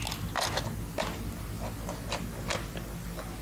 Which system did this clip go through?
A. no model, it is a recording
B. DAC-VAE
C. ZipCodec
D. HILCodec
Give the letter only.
A